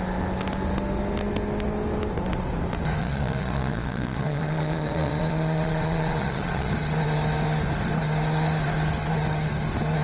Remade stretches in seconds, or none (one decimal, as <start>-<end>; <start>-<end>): 3.0-6.7